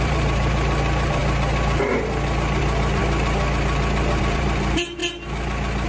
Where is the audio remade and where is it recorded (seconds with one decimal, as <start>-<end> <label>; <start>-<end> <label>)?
0.0-1.2 remade; 1.2-2.6 recorded; 2.6-3.0 remade; 3.0-4.2 recorded; 4.2-5.0 remade; 5.0-5.9 recorded